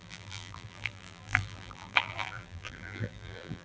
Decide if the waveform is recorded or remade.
remade